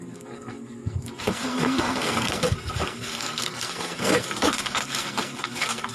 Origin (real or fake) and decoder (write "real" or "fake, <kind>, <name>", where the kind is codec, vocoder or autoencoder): fake, codec, SNAC